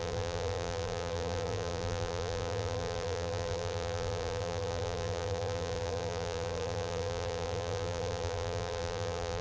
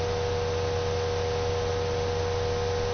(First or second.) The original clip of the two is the second